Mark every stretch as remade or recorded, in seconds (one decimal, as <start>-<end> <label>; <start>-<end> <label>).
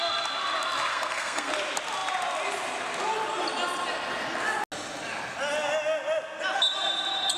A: 0.0-0.9 recorded; 0.9-1.5 remade; 1.5-7.4 recorded